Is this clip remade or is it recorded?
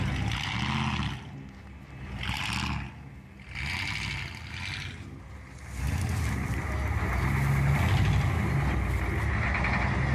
recorded